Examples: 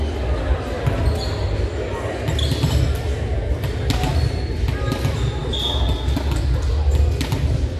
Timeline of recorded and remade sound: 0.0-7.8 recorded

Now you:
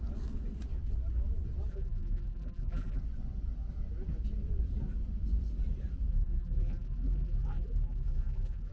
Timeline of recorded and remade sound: 0.0-1.7 recorded; 1.7-3.0 remade; 3.0-6.1 recorded; 6.1-8.7 remade

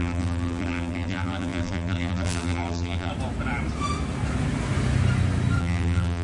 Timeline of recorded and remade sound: 0.0-3.1 remade; 3.1-5.6 recorded; 5.6-6.2 remade